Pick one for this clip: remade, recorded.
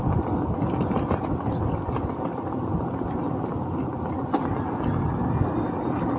recorded